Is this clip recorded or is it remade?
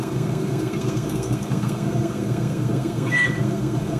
remade